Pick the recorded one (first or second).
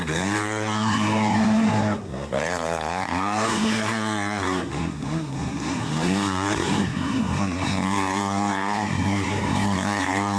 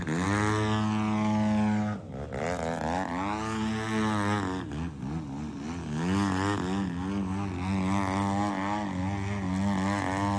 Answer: second